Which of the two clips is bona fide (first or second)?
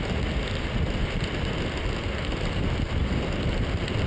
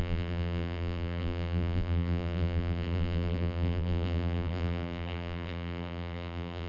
first